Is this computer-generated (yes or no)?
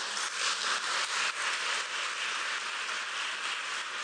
no